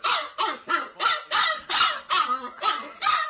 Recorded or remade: recorded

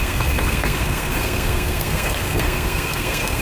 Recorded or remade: remade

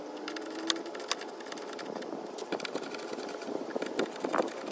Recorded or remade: recorded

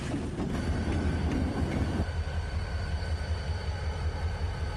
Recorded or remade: recorded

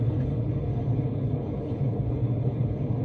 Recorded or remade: remade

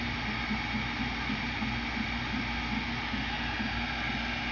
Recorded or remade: recorded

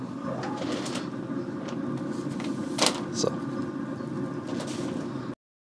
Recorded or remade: recorded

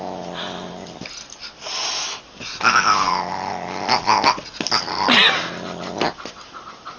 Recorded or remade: recorded